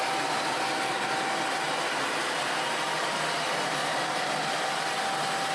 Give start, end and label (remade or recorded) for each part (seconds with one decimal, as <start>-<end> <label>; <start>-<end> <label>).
0.0-5.5 recorded